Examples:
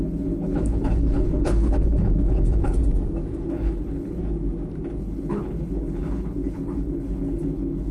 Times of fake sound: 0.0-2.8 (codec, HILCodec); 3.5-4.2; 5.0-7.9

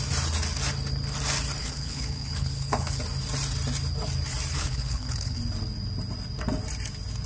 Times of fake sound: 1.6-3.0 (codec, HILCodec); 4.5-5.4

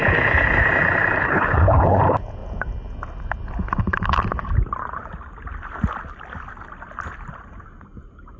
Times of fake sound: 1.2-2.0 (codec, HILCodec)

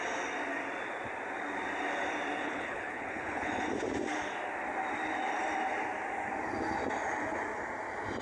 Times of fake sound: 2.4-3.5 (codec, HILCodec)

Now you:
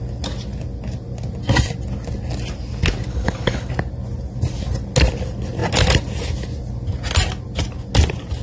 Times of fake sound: 3.1-3.7 (codec, HILCodec)

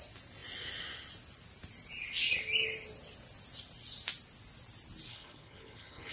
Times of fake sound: 5.1-6.1 (codec, HILCodec)

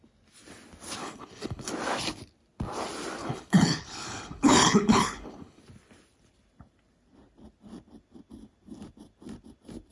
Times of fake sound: 1.0-1.7 (codec, HILCodec); 3.2-5.6